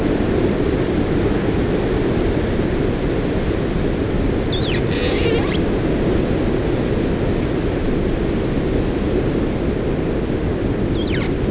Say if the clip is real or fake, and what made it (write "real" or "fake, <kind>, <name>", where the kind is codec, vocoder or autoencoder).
real